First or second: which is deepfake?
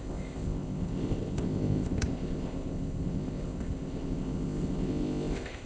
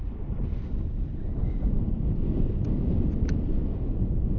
first